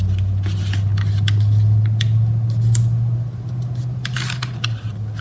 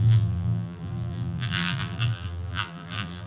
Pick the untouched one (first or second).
first